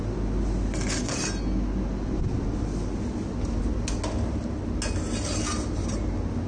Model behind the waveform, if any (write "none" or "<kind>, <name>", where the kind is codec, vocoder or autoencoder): none